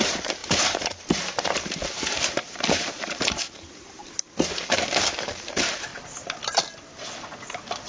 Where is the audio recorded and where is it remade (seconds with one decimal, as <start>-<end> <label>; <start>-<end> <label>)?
0.0-4.0 remade; 4.0-4.7 recorded; 4.7-5.9 remade; 5.9-7.9 recorded